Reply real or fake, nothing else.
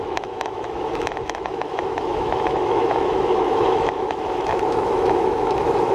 fake